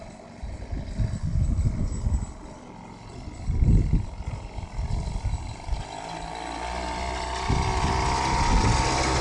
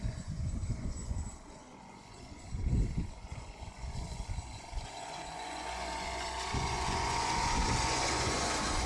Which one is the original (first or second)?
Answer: first